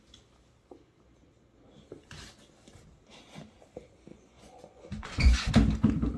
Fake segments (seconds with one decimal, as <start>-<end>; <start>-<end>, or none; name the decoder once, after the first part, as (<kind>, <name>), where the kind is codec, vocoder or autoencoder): 4.1-5.5 (vocoder, Vocos)